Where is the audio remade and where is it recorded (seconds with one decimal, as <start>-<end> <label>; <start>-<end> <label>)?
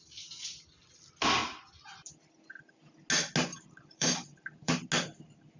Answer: 0.0-1.4 recorded; 1.4-2.1 remade; 2.1-3.5 recorded; 3.5-4.7 remade; 4.7-5.6 recorded